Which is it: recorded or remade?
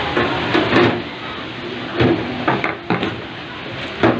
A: recorded